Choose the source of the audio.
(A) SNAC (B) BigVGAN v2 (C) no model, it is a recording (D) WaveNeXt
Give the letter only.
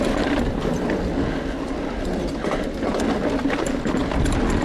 C